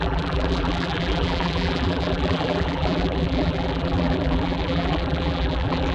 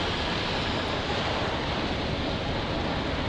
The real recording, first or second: second